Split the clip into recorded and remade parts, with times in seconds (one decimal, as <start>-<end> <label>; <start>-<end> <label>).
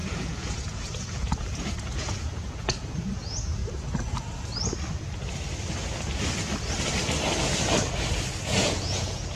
0.0-3.6 remade; 3.6-8.4 recorded; 8.4-9.4 remade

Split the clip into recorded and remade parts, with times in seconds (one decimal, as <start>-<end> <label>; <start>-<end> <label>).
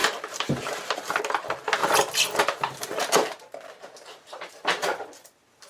0.0-1.2 remade; 1.2-1.8 recorded; 1.8-5.0 remade; 5.0-5.7 recorded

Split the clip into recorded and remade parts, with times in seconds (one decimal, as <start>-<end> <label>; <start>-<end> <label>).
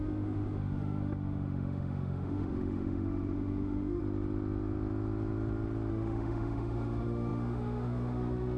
0.0-4.0 remade; 4.0-5.9 recorded; 5.9-8.6 remade